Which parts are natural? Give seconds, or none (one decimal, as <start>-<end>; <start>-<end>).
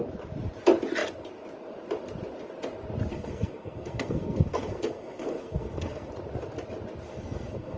0.0-3.1; 6.1-7.1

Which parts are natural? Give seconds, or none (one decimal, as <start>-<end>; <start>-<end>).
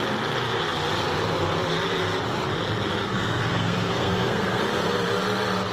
0.0-3.0; 4.6-5.7